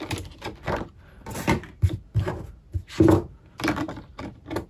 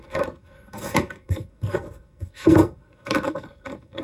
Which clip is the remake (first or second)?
second